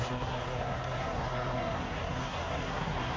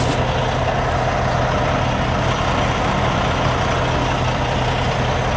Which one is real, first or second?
second